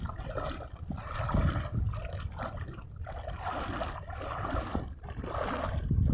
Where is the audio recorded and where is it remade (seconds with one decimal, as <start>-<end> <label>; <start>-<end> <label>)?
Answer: 0.0-6.1 recorded